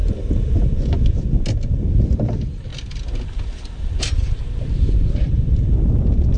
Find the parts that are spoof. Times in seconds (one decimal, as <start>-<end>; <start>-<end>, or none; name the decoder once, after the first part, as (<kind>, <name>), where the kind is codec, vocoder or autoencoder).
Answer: none